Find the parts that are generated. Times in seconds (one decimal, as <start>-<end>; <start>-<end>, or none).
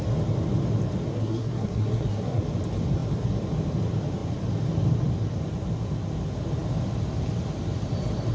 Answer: 1.1-2.4